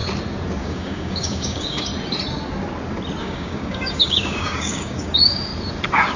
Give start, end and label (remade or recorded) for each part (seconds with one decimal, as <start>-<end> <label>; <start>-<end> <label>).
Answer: 0.0-0.6 recorded; 0.6-1.9 remade; 1.9-3.2 recorded; 3.2-5.5 remade; 5.5-6.2 recorded